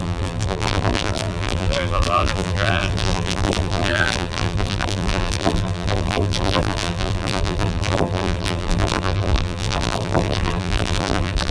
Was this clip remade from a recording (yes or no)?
yes